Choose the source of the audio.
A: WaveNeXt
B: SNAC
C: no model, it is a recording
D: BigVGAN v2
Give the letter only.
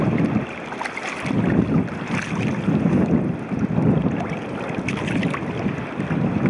C